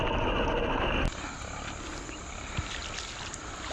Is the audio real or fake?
real